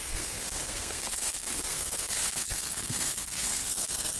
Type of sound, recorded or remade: remade